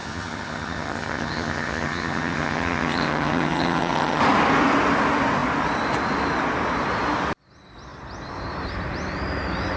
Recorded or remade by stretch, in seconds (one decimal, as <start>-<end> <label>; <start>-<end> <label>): 0.0-4.2 remade; 4.2-9.8 recorded